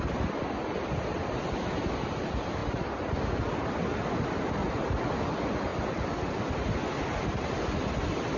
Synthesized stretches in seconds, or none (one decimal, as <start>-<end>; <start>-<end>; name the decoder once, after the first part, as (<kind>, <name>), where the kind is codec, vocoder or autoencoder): 0.0-2.6 (vocoder, BigVGAN v2); 4.0-4.6; 5.2-8.4